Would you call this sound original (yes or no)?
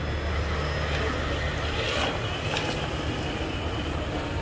yes